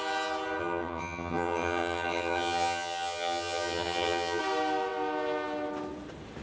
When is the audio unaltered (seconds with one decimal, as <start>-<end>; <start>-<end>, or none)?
0.0-0.6; 4.4-6.4